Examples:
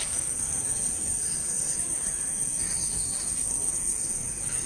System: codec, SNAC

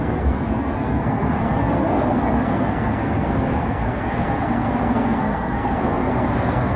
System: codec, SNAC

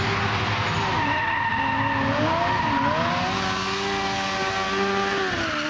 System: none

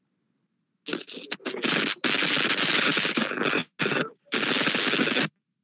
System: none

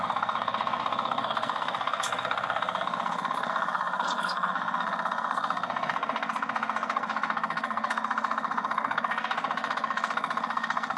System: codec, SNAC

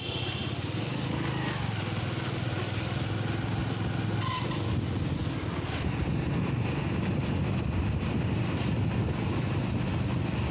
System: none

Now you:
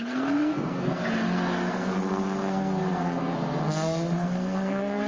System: codec, SNAC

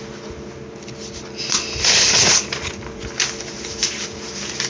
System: none